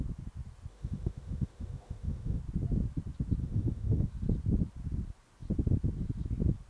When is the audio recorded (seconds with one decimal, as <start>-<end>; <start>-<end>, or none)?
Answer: 0.0-0.7; 2.4-3.4; 4.1-6.7